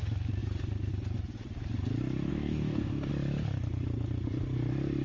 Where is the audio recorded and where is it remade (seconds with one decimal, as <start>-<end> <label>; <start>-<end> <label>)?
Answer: 0.0-2.3 recorded; 2.3-3.1 remade; 3.1-5.0 recorded